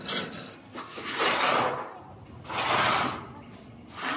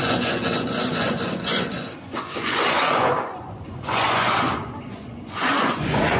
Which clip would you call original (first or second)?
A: first